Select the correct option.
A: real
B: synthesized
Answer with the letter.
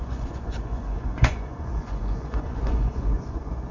B